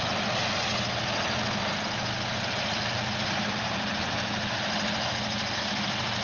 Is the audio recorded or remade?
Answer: recorded